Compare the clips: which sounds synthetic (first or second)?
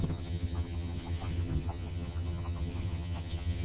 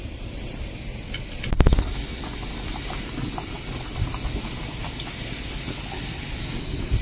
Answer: first